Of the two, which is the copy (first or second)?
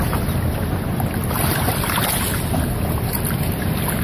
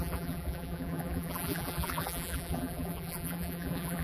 second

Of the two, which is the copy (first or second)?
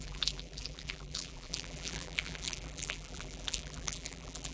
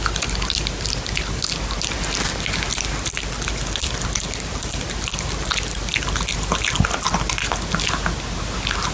first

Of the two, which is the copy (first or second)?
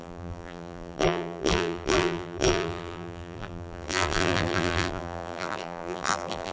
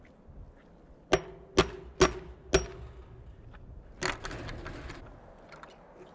first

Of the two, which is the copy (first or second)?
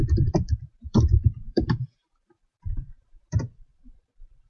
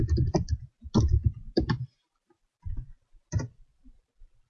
first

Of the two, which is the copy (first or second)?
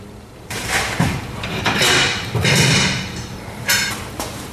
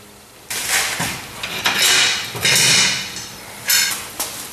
first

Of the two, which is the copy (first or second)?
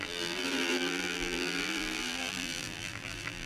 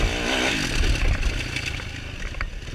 first